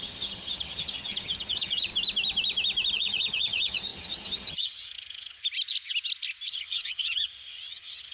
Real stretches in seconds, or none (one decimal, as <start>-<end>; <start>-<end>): 1.9-2.9; 5.4-6.5